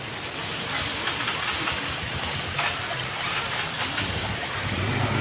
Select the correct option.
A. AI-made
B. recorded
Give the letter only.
B